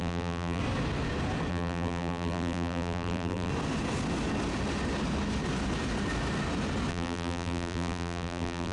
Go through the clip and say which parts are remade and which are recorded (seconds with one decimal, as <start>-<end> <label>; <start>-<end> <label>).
0.0-0.6 remade; 0.6-1.5 recorded; 1.5-3.5 remade; 3.5-6.9 recorded; 6.9-8.7 remade